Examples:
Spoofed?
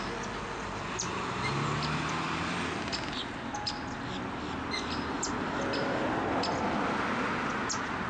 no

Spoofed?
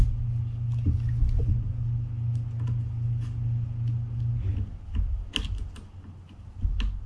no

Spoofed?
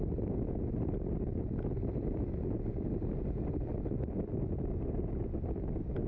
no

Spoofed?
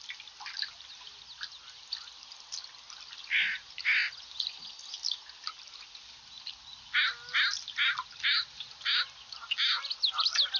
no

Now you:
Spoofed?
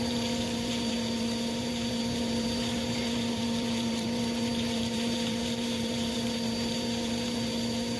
yes